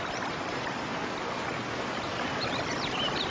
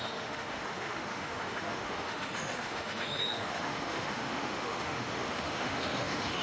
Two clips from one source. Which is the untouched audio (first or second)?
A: first